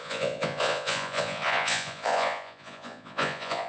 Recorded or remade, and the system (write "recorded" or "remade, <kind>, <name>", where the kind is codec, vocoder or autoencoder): remade, vocoder, Vocos